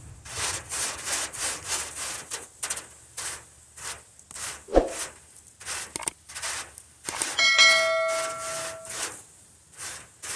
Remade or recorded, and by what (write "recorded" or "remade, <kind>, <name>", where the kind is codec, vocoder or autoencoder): recorded